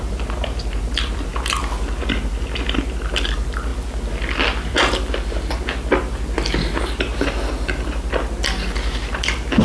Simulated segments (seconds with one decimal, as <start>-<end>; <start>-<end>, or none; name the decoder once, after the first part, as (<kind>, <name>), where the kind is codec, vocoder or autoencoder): none